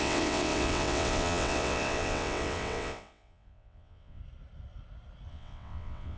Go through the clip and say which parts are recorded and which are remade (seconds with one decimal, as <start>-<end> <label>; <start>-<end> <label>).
0.0-4.2 remade; 4.2-5.3 recorded; 5.3-6.2 remade